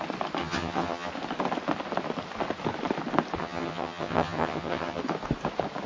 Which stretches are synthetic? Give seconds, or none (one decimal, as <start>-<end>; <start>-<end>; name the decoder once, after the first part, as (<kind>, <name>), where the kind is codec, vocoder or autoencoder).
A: 0.4-1.1 (vocoder, HiFi-GAN); 3.4-5.0